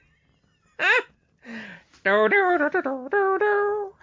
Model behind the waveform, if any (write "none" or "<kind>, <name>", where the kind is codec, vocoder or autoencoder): none